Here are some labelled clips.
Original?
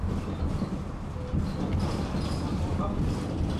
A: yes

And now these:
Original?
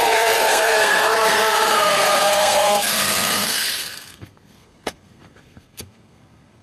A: no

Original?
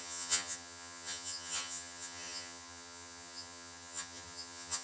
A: no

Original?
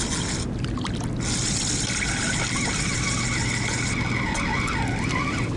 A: yes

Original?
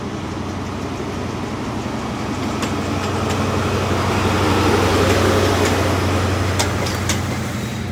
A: yes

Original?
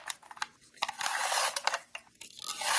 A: yes